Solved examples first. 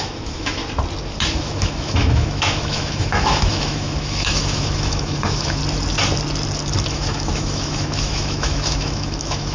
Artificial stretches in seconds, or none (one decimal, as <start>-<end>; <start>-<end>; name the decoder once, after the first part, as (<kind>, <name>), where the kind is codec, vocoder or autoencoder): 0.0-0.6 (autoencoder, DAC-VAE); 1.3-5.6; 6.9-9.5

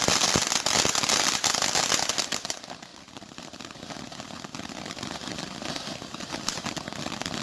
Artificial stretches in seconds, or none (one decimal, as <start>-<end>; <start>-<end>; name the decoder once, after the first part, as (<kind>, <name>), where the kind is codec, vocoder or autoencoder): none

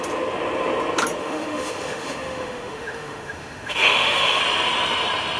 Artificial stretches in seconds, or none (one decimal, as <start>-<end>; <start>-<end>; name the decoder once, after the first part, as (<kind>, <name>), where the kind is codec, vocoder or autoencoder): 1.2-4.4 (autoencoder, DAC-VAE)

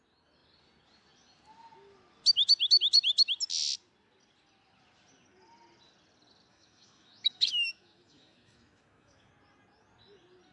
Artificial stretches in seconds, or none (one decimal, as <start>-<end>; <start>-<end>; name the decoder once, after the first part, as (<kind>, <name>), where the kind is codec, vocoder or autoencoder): 6.5-9.3 (autoencoder, DAC-VAE)